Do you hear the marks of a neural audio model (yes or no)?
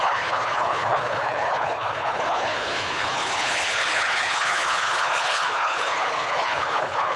yes